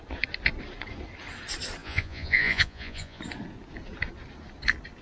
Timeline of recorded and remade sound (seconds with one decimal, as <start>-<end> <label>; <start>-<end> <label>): 0.0-1.8 recorded; 1.8-3.2 remade; 3.2-5.0 recorded